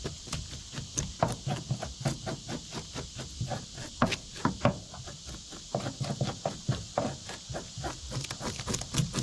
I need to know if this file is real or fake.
real